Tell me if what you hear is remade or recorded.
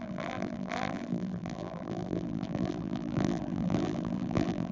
remade